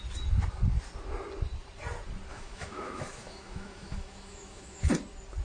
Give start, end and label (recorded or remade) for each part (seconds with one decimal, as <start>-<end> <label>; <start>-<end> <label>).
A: 0.0-2.3 recorded; 2.3-4.9 remade; 4.9-5.4 recorded